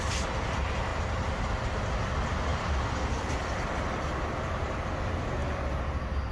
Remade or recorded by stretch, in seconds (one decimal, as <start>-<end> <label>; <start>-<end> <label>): 0.0-6.3 recorded